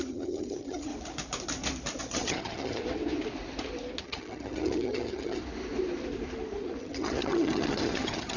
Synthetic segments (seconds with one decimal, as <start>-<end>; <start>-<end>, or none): 0.0-0.9; 2.0-2.8; 4.0-5.4; 6.8-8.4